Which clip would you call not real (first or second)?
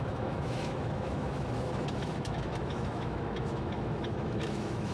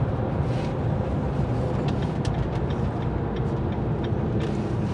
first